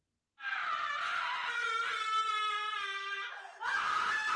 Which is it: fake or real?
real